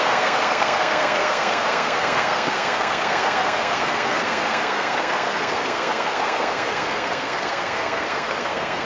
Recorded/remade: remade